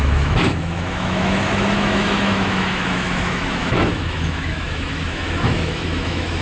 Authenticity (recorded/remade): remade